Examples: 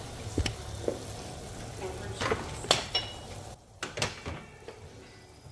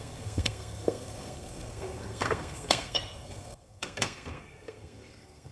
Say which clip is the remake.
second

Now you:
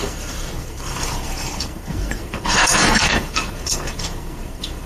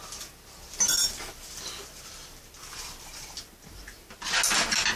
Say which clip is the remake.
first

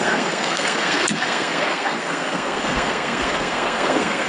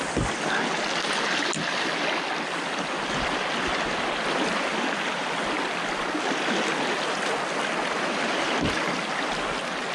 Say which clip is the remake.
first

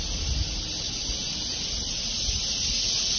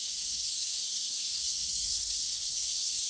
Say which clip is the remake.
second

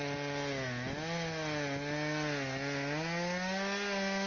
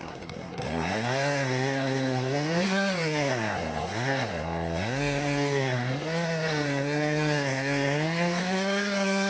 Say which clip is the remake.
second